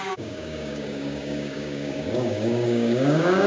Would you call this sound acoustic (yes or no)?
no